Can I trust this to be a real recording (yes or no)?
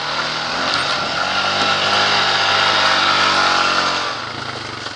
yes